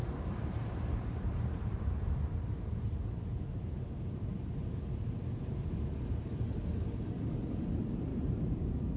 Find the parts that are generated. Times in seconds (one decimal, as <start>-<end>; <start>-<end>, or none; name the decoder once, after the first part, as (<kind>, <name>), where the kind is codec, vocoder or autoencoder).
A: 0.0-4.8 (vocoder, BigVGAN v2); 8.1-8.6